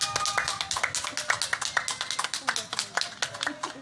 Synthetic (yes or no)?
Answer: no